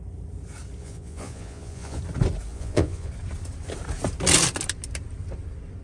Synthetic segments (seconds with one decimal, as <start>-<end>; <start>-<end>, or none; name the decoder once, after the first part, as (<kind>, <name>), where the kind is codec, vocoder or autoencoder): 0.8-2.0 (vocoder, Vocos); 2.5-3.1